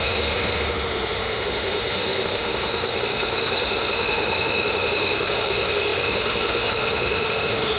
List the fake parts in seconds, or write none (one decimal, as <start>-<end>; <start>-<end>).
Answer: 0.0-7.8